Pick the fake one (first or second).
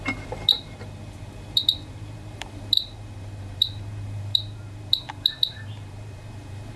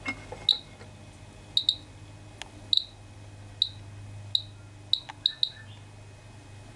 first